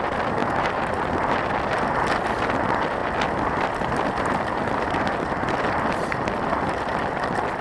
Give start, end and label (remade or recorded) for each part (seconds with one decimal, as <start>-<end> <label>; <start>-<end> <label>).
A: 0.0-7.6 recorded